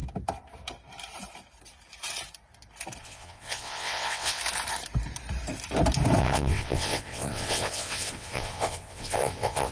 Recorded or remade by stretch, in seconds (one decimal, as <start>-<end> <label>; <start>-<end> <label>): 0.0-3.0 recorded; 3.0-4.4 remade; 4.4-6.2 recorded; 6.2-9.7 remade